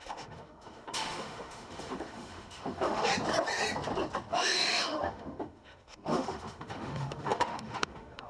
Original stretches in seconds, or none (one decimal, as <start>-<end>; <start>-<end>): 3.1-4.3